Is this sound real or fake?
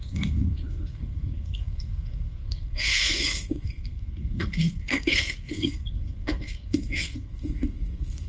fake